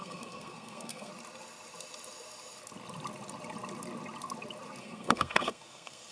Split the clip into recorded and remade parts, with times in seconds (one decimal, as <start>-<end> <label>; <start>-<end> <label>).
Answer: 0.0-1.1 remade; 1.1-4.8 recorded; 4.8-6.1 remade